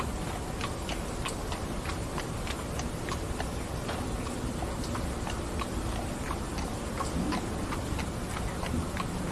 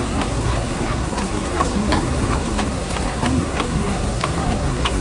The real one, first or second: first